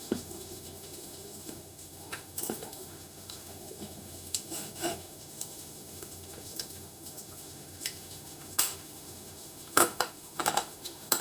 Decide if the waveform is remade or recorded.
remade